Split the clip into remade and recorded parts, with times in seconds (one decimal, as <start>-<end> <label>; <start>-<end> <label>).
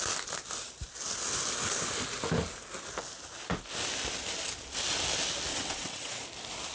0.0-5.5 recorded; 5.5-6.2 remade; 6.2-6.7 recorded